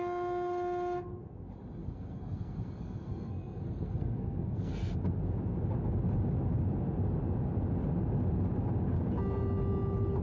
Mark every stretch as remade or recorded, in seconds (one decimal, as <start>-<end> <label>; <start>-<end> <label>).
0.0-1.8 recorded; 1.8-5.2 remade; 5.2-10.2 recorded